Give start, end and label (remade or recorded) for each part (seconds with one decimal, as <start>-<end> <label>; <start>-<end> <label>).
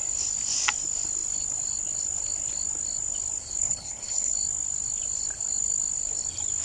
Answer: 0.0-3.6 recorded; 3.6-4.3 remade; 4.3-6.6 recorded